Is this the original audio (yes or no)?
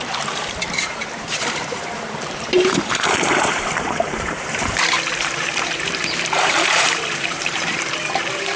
no